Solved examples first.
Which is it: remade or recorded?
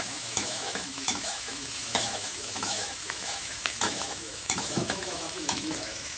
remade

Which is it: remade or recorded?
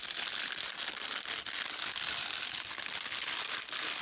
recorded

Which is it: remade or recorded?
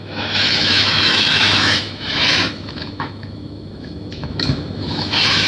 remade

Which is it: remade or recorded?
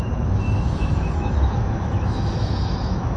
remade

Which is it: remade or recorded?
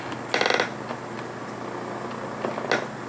recorded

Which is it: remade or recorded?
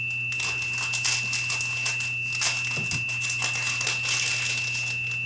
recorded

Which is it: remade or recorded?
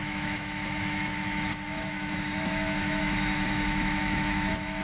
remade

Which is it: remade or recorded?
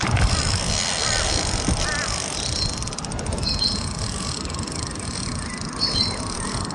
recorded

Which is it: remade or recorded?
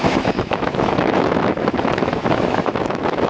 remade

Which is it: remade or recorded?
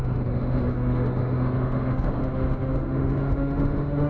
remade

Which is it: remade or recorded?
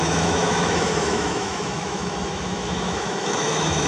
remade